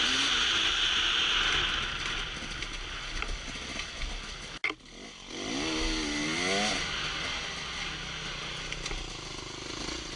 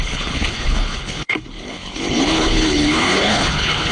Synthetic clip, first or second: second